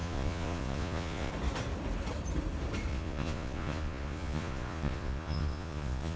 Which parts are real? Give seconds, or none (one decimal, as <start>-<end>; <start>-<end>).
1.3-2.9

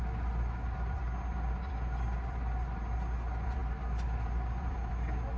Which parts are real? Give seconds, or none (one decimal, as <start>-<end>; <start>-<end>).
0.0-5.4